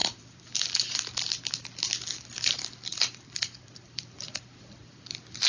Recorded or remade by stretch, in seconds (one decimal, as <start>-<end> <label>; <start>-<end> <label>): 0.0-0.9 remade; 0.9-2.9 recorded; 2.9-5.1 remade; 5.1-5.5 recorded